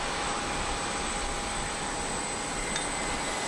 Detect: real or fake real